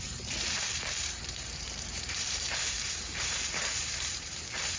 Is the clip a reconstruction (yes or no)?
yes